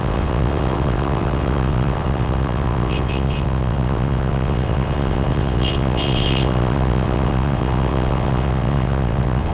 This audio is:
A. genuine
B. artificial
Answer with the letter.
B